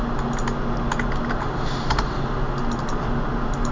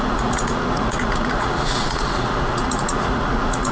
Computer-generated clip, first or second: second